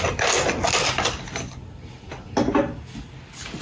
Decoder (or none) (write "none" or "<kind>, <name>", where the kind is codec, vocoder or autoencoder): none